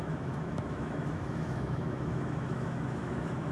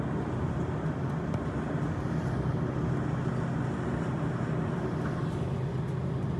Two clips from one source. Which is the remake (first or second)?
first